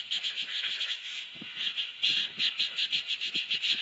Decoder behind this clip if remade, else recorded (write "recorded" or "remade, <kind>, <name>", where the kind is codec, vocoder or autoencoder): remade, autoencoder, DAC-VAE